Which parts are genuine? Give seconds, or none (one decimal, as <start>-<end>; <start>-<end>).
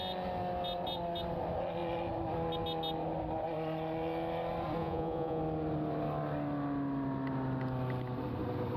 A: 0.0-4.8; 5.4-8.8